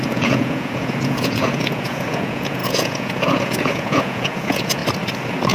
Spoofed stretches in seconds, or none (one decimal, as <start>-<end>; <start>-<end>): 0.0-4.8